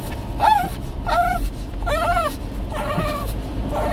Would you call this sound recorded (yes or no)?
yes